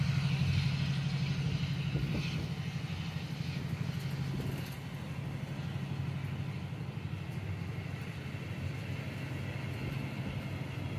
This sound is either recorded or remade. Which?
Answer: recorded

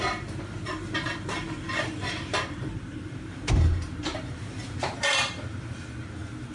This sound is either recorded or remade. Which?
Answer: remade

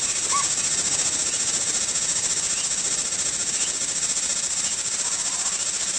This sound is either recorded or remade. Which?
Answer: recorded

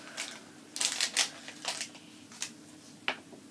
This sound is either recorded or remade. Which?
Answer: recorded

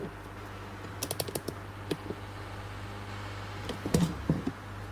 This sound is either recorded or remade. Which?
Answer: recorded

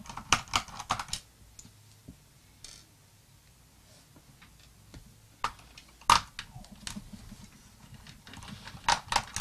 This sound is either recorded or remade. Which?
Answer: recorded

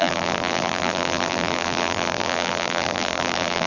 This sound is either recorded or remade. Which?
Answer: remade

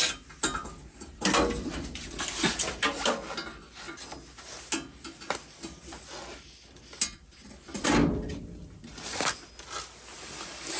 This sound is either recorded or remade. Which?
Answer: recorded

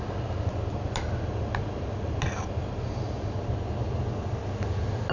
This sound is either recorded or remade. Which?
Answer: recorded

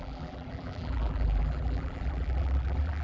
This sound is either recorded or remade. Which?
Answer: remade